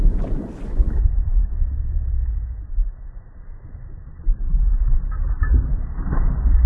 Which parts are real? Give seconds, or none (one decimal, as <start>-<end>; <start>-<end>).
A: 0.0-1.3; 3.0-6.7